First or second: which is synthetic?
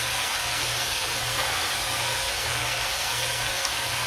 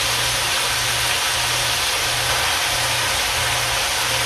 first